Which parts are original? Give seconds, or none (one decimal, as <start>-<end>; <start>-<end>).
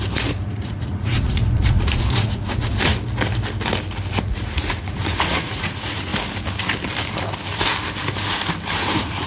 2.9-4.2; 6.1-8.8